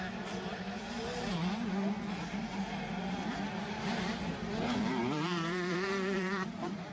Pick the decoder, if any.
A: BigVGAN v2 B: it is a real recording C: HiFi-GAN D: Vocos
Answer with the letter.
A